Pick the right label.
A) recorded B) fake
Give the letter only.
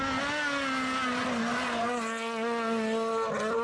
A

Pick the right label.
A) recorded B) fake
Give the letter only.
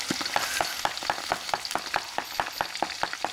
A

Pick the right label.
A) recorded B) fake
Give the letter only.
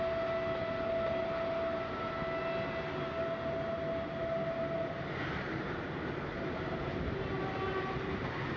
A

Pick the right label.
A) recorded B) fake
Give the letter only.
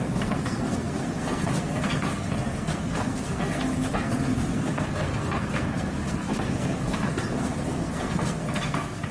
B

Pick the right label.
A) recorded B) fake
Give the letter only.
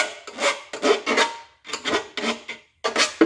A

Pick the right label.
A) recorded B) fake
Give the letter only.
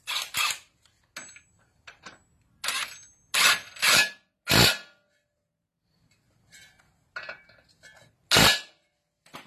A